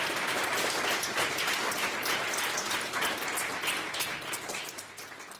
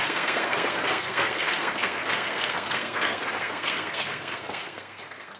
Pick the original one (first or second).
first